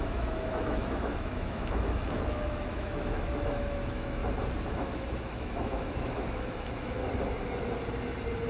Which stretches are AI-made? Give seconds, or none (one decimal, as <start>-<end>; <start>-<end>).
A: 0.0-4.2; 4.7-7.0